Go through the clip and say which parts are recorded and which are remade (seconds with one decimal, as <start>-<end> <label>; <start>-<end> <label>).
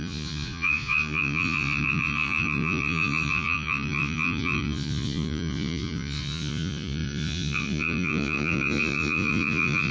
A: 0.0-9.9 remade